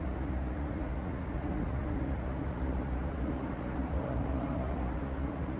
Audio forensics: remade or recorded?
remade